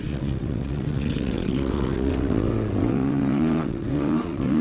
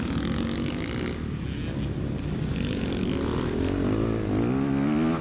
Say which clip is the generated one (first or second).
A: first